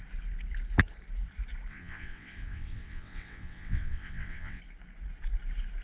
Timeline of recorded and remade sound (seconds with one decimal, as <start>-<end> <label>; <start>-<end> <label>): 0.0-1.7 recorded; 1.7-4.6 remade; 4.6-5.8 recorded